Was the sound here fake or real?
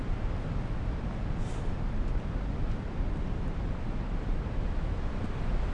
real